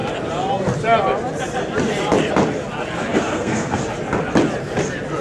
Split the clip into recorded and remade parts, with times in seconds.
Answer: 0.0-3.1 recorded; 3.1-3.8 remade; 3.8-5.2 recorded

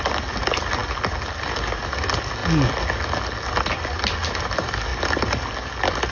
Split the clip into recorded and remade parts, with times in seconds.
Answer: 0.0-6.1 recorded